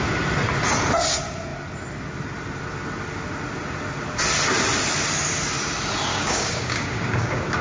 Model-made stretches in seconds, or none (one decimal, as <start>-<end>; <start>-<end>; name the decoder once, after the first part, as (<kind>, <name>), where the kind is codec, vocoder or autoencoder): 6.1-7.6 (codec, DAC)